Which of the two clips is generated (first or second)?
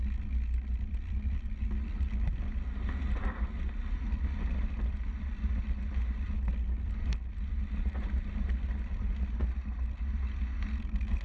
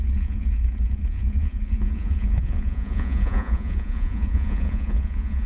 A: second